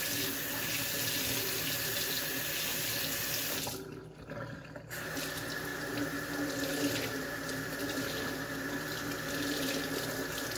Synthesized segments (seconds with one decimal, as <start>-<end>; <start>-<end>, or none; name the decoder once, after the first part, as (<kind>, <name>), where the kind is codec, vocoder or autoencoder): none